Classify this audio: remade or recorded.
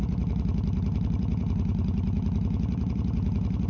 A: remade